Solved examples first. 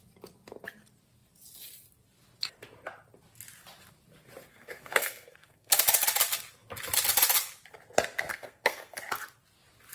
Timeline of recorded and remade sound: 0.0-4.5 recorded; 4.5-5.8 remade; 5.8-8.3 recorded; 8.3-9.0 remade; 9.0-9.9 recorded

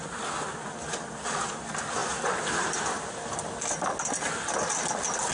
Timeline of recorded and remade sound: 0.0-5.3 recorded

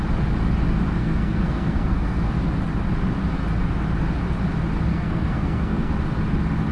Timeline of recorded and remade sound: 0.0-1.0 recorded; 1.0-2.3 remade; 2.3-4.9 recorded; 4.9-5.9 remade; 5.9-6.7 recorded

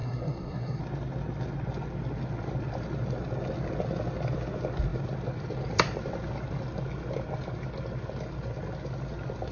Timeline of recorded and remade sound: 0.0-0.8 remade; 0.8-9.5 recorded